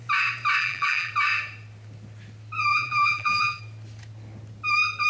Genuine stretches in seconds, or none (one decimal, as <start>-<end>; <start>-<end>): 0.0-0.6; 1.1-2.7; 3.6-5.1

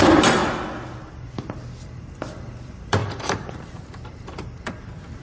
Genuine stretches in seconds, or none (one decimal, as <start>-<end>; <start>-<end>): 0.4-2.0

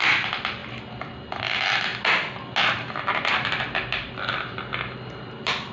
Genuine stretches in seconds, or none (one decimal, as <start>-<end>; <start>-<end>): 0.6-1.4; 1.9-3.2

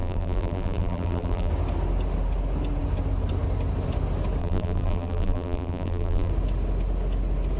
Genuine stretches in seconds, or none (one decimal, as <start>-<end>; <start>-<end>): 1.5-4.4; 6.3-7.6

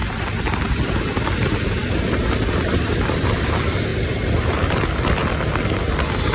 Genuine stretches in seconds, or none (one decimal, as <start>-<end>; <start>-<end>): 0.0-0.7; 5.2-6.3

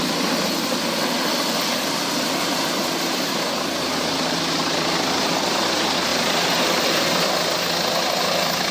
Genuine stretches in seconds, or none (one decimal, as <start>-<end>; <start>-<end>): 0.0-8.7

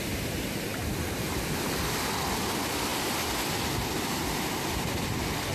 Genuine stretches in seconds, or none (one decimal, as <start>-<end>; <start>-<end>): 0.0-0.7; 1.4-5.5